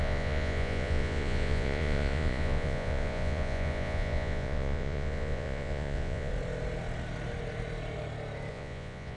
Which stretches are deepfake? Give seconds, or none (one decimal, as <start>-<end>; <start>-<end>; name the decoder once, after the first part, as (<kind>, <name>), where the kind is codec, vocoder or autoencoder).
0.0-6.3 (vocoder, Vocos); 8.5-9.2

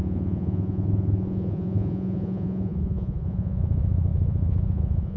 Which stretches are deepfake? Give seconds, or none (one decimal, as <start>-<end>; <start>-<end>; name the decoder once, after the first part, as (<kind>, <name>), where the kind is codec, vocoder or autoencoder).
0.0-5.2 (vocoder, Vocos)

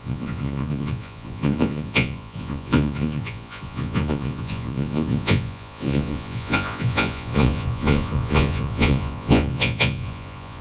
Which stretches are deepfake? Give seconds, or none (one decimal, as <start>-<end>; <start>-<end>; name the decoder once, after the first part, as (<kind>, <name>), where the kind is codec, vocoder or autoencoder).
0.0-10.6 (vocoder, Vocos)